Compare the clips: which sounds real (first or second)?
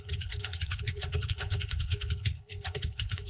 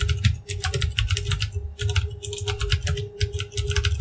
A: second